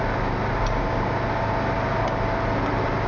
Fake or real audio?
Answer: real